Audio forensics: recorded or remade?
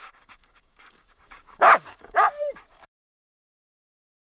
remade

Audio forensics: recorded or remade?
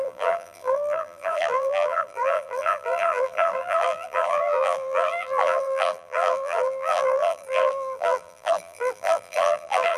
remade